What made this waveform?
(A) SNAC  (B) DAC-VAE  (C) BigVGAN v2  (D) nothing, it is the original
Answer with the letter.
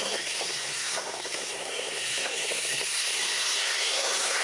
A